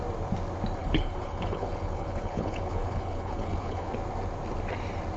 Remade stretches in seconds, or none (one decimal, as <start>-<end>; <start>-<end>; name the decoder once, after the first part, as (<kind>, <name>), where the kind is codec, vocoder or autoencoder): 0.8-3.9 (codec, HILCodec)